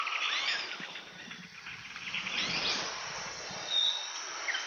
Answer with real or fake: real